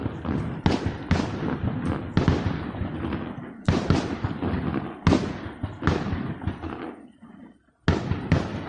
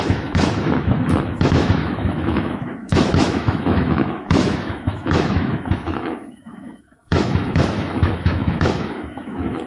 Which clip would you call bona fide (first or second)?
first